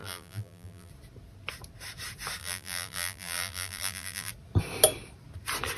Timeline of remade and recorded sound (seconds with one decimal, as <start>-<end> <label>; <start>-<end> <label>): 0.0-0.9 remade; 0.9-2.4 recorded; 2.4-4.3 remade; 4.3-5.8 recorded